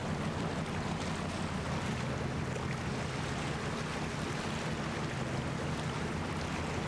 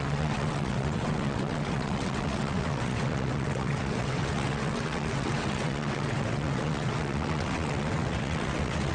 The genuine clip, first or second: first